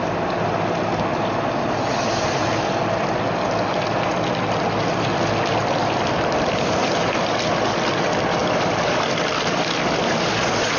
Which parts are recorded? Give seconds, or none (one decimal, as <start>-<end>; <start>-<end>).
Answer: 0.0-8.4; 10.4-10.8